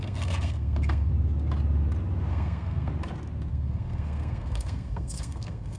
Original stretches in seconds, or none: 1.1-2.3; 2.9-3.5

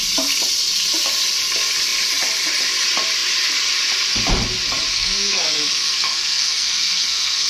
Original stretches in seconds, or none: 0.0-4.9

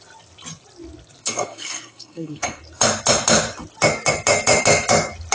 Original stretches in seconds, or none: 0.0-1.2; 2.6-5.3

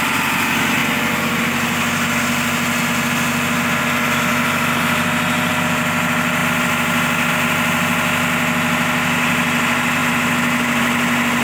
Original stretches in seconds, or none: 0.0-11.4

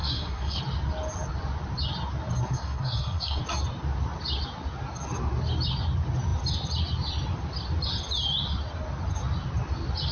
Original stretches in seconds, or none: 0.6-2.4; 3.4-10.1